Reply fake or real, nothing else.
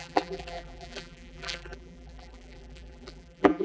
fake